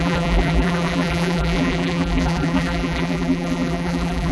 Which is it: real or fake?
fake